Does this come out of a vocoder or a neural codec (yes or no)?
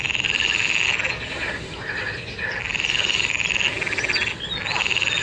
no